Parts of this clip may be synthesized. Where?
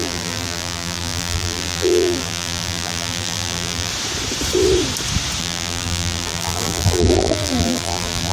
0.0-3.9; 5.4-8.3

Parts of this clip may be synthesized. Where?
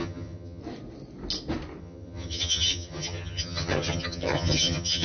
0.0-0.6; 1.8-5.0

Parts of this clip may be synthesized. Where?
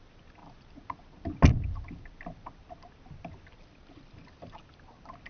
none